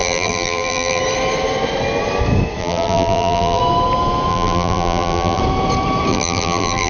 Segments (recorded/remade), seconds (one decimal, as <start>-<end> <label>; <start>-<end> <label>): 0.0-1.0 remade; 1.0-2.6 recorded; 2.6-3.6 remade; 3.6-4.3 recorded; 4.3-5.4 remade; 5.4-6.1 recorded; 6.1-6.9 remade